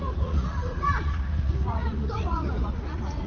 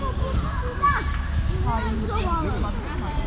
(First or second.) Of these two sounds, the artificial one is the first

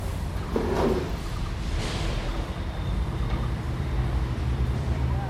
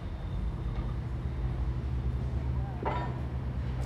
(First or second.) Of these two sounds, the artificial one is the first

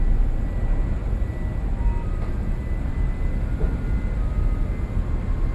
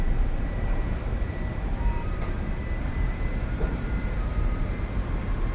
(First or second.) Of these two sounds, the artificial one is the second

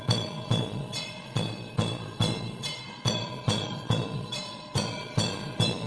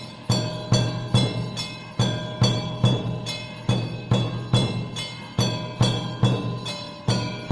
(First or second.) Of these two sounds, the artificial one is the first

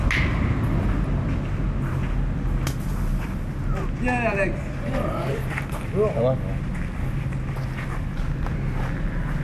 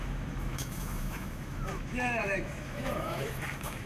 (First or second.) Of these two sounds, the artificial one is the second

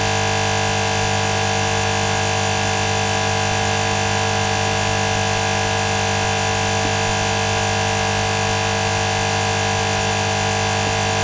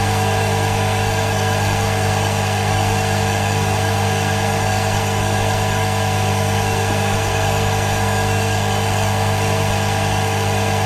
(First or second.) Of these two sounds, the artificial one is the second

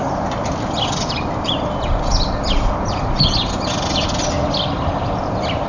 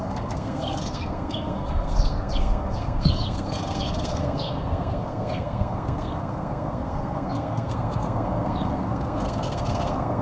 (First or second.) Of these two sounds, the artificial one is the second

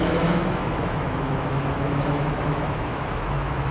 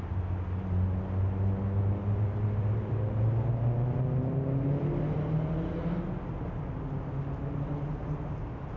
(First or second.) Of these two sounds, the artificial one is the first